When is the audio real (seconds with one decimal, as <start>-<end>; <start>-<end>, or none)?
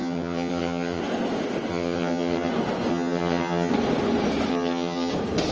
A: 1.0-1.7; 2.5-2.9; 3.7-4.5; 5.1-5.5